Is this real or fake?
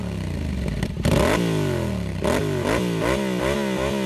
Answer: real